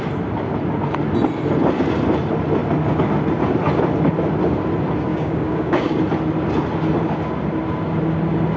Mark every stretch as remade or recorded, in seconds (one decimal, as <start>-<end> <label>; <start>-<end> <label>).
0.0-5.1 recorded; 5.1-6.0 remade; 6.0-8.6 recorded